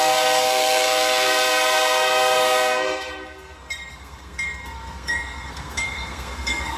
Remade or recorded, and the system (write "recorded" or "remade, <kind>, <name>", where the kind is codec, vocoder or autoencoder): remade, codec, SNAC